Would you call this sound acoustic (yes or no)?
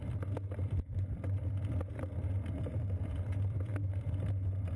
no